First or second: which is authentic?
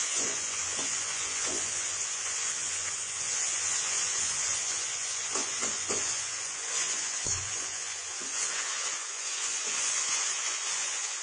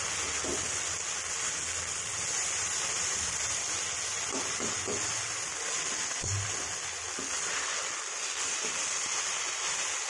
second